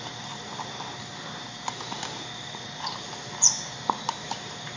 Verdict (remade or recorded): recorded